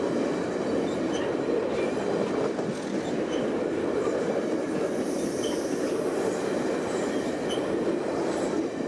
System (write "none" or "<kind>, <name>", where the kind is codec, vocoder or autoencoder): none